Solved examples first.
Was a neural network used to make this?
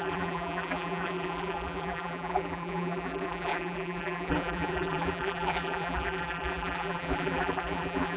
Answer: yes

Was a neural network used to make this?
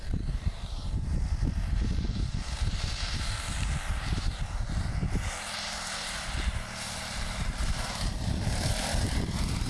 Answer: yes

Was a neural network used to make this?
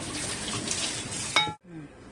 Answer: no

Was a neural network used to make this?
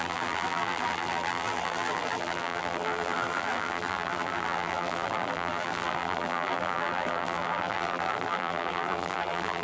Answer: yes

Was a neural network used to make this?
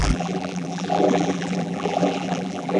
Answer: yes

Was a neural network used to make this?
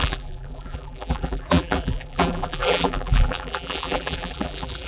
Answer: yes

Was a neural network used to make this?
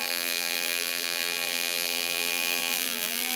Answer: yes